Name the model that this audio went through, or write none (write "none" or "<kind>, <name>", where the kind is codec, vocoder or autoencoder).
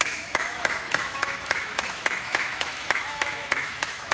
autoencoder, DAC-VAE